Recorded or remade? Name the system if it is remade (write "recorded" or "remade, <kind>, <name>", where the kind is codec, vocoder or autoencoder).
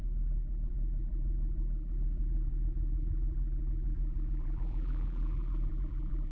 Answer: remade, vocoder, BigVGAN v2